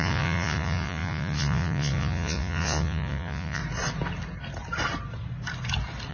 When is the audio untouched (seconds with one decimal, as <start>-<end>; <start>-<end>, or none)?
3.6-6.1